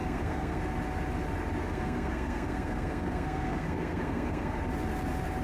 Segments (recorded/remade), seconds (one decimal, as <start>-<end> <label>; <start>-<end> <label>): 0.0-0.6 remade; 0.6-1.6 recorded; 1.6-4.6 remade; 4.6-5.4 recorded